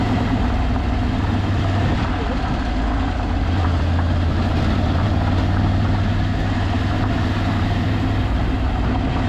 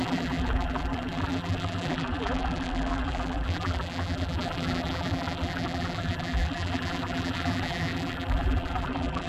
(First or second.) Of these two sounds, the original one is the first